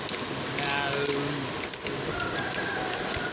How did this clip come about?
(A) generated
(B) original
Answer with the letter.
B